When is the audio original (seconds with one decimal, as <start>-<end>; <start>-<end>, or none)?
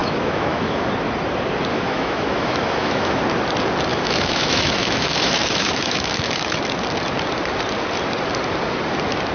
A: 0.9-1.7; 3.2-3.9; 6.6-9.3